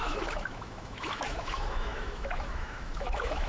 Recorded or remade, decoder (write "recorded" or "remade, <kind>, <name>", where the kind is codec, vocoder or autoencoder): remade, autoencoder, DAC-VAE